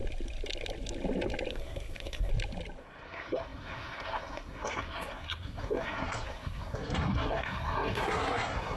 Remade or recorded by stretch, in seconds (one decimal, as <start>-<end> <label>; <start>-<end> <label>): 0.0-1.5 recorded; 1.5-2.3 remade; 2.3-2.8 recorded; 2.8-8.8 remade